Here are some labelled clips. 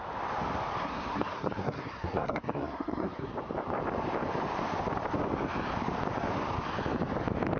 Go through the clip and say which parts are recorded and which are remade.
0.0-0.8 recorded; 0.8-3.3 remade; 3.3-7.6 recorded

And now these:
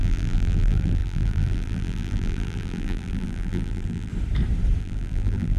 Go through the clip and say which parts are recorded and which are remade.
0.0-4.1 remade; 4.1-4.8 recorded; 4.8-5.6 remade

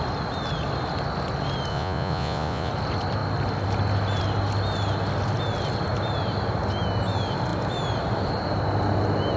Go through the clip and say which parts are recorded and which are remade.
0.0-1.7 recorded; 1.7-2.7 remade; 2.7-9.4 recorded

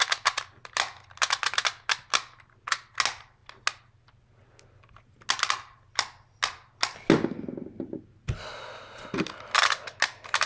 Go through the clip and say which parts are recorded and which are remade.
0.0-10.5 recorded

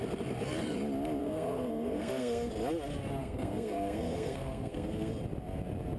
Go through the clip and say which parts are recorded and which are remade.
0.0-1.2 recorded; 1.2-2.5 remade; 2.5-3.2 recorded; 3.2-5.1 remade; 5.1-6.0 recorded